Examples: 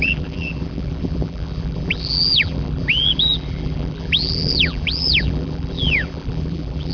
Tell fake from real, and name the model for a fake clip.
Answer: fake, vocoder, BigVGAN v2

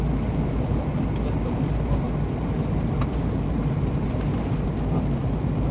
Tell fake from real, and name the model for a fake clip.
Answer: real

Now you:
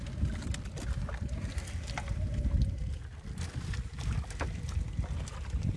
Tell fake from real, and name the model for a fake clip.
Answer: real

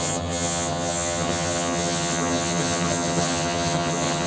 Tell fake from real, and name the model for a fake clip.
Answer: fake, vocoder, HiFi-GAN